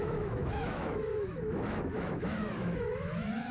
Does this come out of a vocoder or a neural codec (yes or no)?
yes